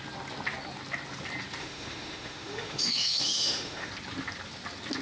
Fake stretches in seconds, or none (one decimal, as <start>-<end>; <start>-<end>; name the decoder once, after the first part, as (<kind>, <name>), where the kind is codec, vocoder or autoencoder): 1.6-3.9 (autoencoder, DAC-VAE)